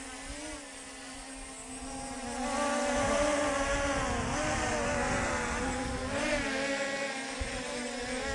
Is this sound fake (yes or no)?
no